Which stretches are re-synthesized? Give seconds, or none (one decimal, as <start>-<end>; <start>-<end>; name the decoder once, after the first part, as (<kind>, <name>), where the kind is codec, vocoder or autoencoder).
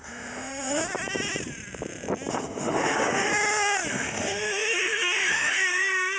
0.0-0.8 (autoencoder, DAC-VAE); 2.3-3.3; 3.9-6.2